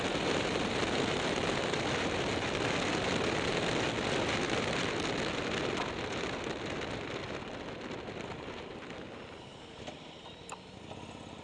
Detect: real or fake real